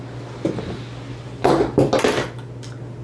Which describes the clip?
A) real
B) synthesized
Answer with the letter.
A